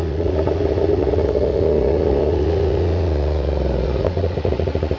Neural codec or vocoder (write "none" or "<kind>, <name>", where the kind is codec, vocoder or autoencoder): vocoder, Vocos